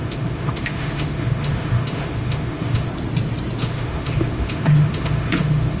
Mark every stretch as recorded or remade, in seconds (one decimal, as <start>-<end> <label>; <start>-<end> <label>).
0.0-2.9 remade; 2.9-3.6 recorded; 3.6-5.8 remade